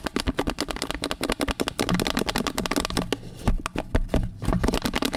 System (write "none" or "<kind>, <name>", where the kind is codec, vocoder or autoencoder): none